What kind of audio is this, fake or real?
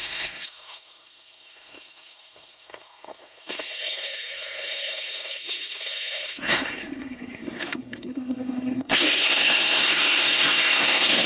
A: fake